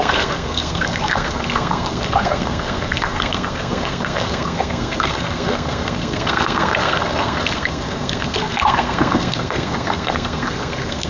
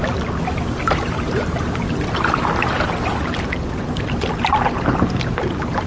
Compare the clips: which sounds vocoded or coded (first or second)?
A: first